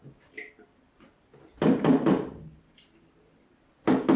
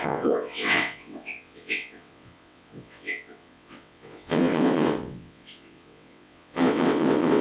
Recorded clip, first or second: first